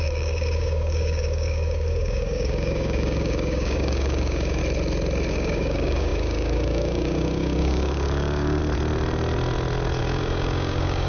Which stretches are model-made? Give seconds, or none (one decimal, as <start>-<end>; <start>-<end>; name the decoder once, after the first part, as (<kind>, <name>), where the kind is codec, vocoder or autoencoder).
0.0-4.6 (codec, DAC); 5.3-8.6; 10.0-11.1